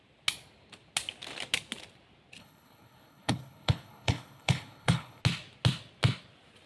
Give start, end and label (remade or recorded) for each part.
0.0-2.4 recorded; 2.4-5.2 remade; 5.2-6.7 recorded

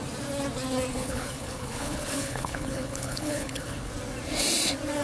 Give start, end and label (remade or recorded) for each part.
0.0-0.9 recorded; 0.9-3.9 remade; 3.9-5.0 recorded

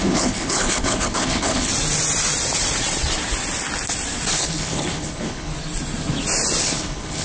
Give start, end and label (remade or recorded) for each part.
0.0-1.7 remade; 1.7-4.3 recorded; 4.3-5.5 remade; 5.5-6.6 recorded; 6.6-7.2 remade

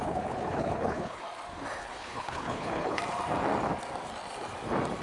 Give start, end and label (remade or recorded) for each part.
0.0-1.2 remade; 1.2-1.8 recorded; 1.8-3.0 remade; 3.0-5.0 recorded

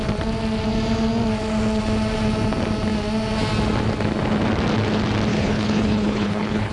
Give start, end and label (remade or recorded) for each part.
0.0-5.3 recorded; 5.3-6.7 remade